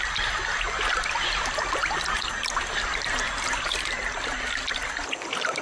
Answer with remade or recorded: recorded